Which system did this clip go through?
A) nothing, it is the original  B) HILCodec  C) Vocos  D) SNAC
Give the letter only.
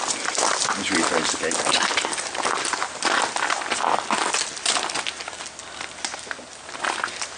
A